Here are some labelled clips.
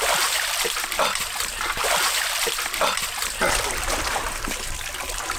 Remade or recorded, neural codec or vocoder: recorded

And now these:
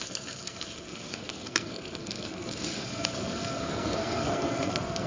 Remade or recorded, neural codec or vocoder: remade, codec, SNAC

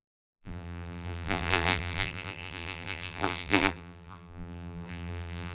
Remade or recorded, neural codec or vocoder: remade, vocoder, BigVGAN v2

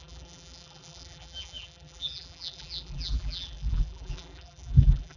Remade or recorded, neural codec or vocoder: remade, vocoder, BigVGAN v2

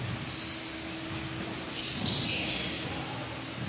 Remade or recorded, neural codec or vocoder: recorded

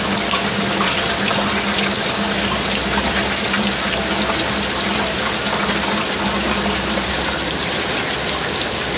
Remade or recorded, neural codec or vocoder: recorded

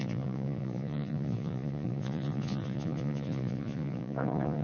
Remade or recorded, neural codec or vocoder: remade, vocoder, Vocos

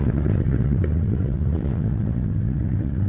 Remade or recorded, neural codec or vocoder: remade, vocoder, WaveNeXt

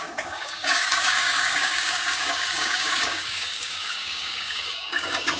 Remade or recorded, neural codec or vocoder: remade, codec, DAC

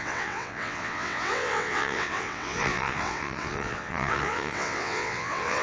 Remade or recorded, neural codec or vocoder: remade, vocoder, WaveNeXt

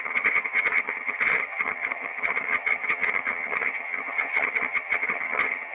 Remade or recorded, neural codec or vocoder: remade, vocoder, HiFi-GAN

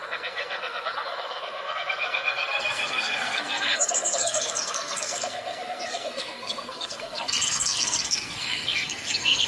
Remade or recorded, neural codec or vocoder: remade, codec, SNAC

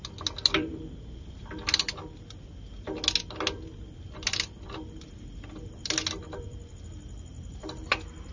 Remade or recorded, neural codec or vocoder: recorded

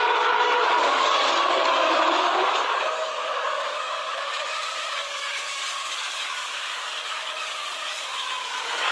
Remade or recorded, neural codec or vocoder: remade, codec, DAC